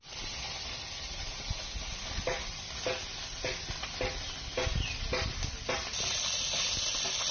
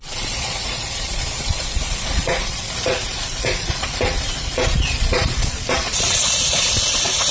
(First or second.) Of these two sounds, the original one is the first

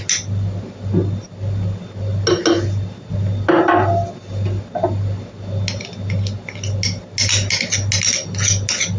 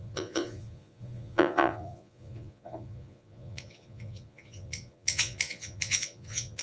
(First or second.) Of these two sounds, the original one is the first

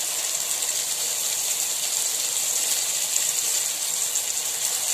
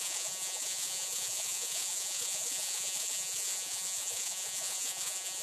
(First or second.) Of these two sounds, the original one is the first